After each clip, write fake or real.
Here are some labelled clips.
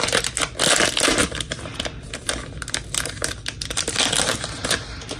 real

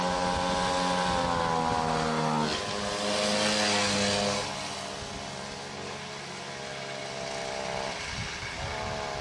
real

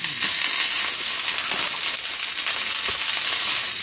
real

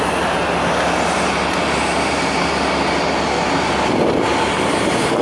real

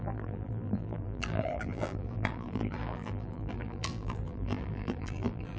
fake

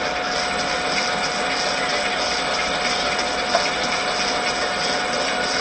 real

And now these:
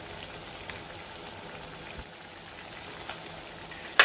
real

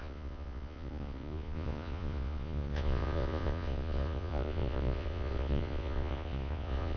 fake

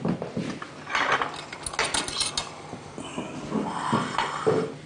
real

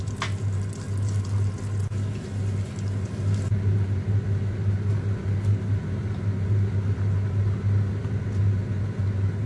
real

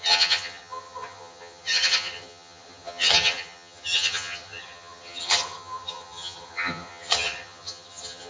fake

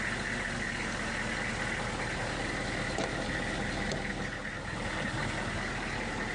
real